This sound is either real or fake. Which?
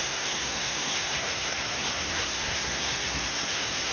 fake